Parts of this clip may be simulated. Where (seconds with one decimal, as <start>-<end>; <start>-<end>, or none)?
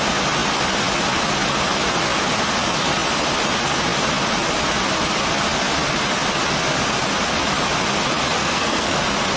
8.4-9.0